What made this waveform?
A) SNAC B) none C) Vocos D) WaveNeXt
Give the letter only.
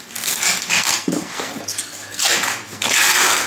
A